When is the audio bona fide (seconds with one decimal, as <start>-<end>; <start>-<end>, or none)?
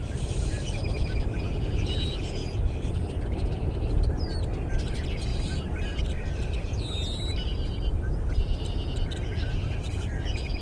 0.0-10.6